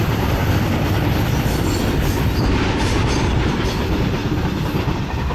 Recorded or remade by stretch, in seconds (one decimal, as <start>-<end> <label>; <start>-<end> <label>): 0.0-4.2 recorded; 4.2-5.3 remade